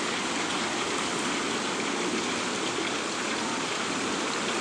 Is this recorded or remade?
recorded